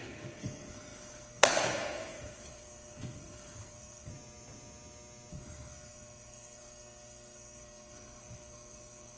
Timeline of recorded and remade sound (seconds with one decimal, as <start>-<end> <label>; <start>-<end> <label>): 0.0-4.1 remade; 4.1-5.3 recorded; 5.3-9.2 remade